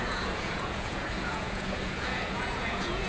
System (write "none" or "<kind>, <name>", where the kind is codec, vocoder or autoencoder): vocoder, Vocos